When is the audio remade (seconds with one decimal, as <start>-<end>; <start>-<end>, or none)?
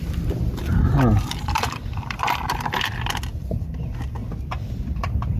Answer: 0.0-4.2; 5.0-5.4